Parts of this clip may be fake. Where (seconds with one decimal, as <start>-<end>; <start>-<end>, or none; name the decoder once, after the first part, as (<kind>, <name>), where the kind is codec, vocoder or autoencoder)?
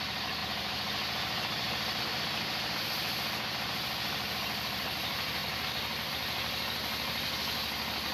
none